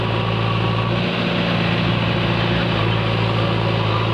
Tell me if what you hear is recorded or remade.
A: recorded